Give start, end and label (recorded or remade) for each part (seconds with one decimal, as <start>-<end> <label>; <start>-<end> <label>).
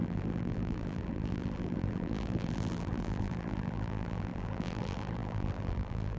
0.0-6.2 remade